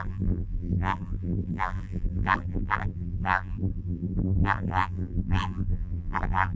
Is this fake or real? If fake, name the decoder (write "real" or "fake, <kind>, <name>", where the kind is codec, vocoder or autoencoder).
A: fake, vocoder, BigVGAN v2